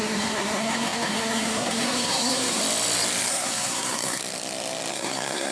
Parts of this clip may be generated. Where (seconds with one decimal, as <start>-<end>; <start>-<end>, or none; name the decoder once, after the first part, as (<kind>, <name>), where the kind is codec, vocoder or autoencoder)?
0.0-2.6 (codec, SNAC); 3.3-4.2; 4.9-5.5